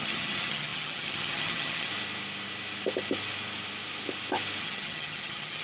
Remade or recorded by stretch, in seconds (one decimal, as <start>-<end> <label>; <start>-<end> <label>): 0.0-1.9 remade; 1.9-4.6 recorded; 4.6-5.6 remade